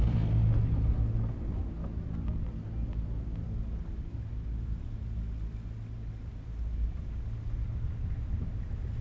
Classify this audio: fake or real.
real